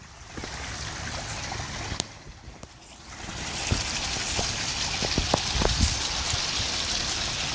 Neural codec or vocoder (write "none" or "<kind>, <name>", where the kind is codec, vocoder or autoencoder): none